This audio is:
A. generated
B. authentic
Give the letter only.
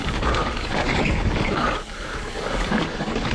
A